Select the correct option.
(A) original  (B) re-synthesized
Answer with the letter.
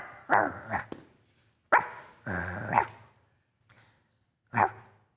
A